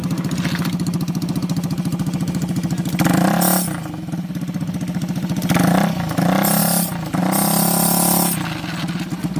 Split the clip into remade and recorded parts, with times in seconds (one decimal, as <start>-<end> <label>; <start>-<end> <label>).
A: 0.0-9.4 recorded